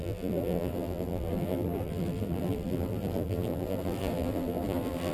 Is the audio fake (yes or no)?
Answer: yes